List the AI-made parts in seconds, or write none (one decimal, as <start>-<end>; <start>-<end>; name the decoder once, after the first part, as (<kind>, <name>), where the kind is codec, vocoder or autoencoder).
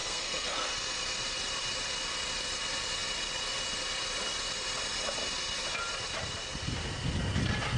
0.0-0.7 (codec, SNAC)